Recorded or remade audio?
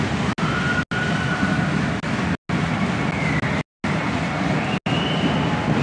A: recorded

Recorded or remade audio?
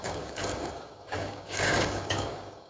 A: remade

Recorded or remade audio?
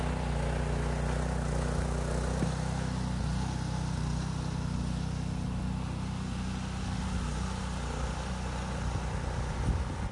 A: recorded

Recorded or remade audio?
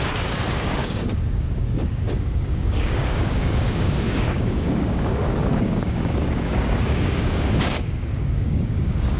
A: remade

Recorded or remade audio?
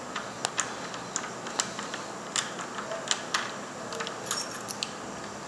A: recorded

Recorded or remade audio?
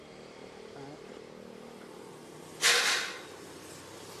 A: recorded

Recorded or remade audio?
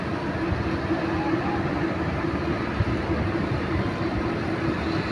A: recorded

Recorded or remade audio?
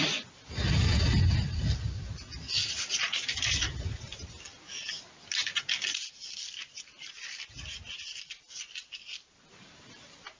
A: recorded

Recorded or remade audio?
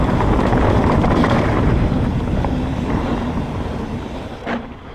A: remade